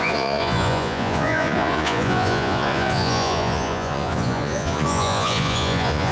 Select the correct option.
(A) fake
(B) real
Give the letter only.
A